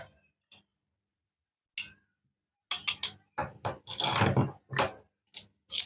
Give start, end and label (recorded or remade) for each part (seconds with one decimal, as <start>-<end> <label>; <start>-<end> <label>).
0.0-5.9 recorded